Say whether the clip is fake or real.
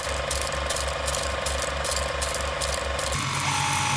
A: real